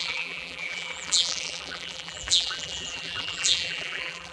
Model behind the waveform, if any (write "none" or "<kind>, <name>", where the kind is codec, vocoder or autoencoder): vocoder, BigVGAN v2